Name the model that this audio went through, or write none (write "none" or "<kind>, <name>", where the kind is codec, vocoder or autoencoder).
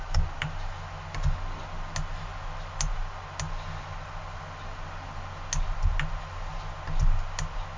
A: none